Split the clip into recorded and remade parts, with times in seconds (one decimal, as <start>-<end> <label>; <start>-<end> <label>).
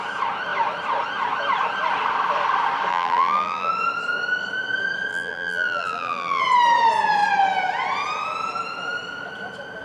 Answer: 0.0-2.9 recorded; 2.9-3.7 remade; 3.7-5.1 recorded; 5.1-6.4 remade; 6.4-9.8 recorded